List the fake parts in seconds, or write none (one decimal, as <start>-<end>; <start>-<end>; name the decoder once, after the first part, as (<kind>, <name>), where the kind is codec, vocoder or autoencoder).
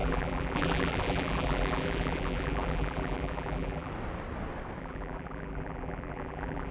0.0-3.9 (vocoder, BigVGAN v2); 4.8-6.7